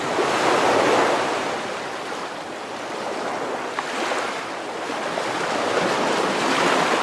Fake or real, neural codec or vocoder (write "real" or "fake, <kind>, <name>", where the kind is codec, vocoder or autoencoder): real